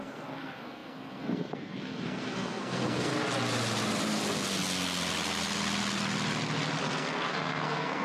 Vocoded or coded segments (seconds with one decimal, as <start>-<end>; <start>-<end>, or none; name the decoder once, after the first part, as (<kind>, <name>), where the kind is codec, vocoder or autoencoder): 0.0-3.1 (codec, SNAC); 6.8-8.0

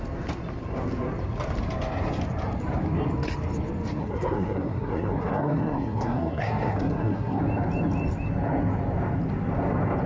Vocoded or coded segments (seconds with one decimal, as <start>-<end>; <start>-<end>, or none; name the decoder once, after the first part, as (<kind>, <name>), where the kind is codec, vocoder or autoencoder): 4.0-7.4 (codec, SNAC)

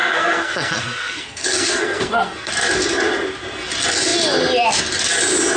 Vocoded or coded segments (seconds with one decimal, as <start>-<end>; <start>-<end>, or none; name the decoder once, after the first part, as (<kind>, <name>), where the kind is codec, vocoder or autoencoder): 0.0-2.5 (codec, SNAC)

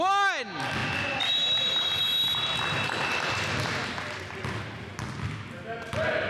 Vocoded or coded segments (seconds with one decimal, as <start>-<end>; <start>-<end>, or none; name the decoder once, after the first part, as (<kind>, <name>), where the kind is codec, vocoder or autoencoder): none

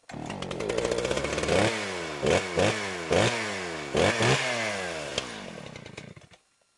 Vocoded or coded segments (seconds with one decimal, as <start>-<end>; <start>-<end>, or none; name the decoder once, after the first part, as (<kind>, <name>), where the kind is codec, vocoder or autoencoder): none

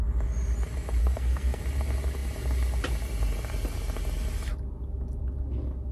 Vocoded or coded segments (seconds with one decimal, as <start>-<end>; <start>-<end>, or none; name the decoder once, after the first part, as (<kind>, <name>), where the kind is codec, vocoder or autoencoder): 1.0-1.6 (codec, SNAC)